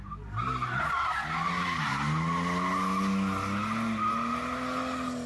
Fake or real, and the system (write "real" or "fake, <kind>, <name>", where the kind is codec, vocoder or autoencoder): real